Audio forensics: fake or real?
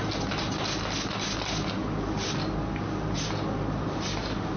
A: real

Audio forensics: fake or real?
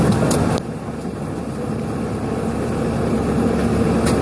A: real